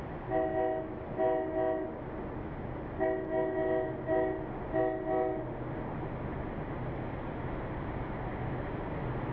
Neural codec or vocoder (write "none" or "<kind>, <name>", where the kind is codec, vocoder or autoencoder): none